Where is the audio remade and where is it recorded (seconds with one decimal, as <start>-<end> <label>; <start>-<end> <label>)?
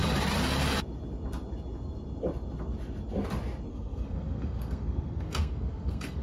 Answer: 0.0-3.7 recorded; 3.7-6.2 remade